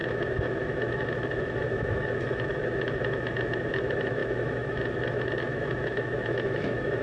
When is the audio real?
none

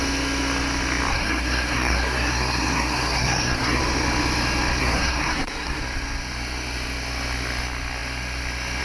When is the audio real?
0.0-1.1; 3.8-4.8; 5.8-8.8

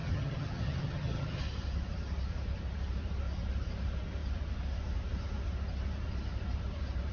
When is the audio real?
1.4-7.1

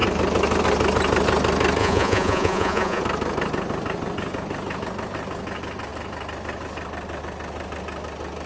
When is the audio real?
0.0-1.8; 3.0-8.5

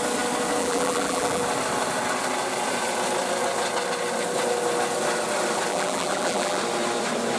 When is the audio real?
0.0-0.6; 1.4-5.7; 6.6-7.4

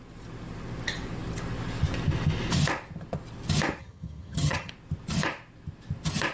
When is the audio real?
0.0-3.8; 4.7-6.3

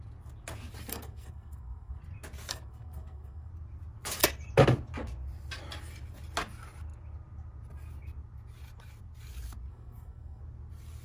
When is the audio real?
0.0-0.9; 2.0-2.5; 3.5-9.7; 10.4-11.0

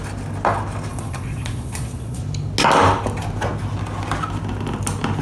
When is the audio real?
0.0-0.9; 2.2-5.2